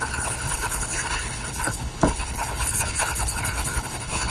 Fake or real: fake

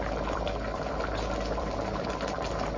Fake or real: fake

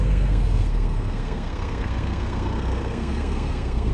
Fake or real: fake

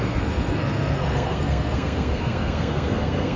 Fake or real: fake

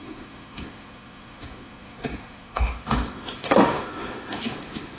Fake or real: fake